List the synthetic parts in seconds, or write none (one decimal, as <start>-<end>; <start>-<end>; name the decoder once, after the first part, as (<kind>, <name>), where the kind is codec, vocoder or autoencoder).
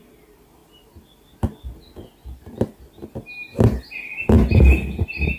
none